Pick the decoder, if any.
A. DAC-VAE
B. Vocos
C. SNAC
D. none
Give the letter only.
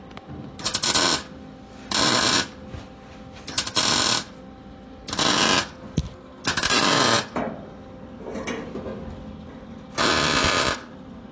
D